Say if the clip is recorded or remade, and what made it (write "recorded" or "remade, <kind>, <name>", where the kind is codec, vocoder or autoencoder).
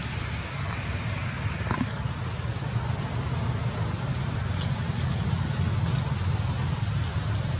recorded